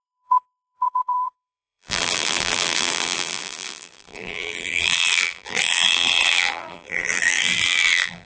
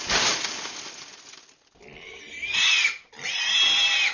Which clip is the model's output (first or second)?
first